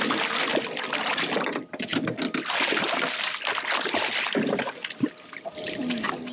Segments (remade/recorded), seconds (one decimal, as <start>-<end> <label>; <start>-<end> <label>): 0.0-6.3 recorded